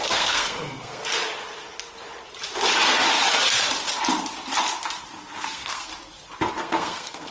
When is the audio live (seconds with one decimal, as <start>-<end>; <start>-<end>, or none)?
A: 1.0-5.4; 5.9-6.5